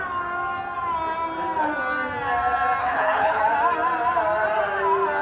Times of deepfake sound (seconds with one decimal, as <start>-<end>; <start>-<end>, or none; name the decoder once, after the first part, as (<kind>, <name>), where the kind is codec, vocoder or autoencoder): 2.8-3.4 (codec, HILCodec)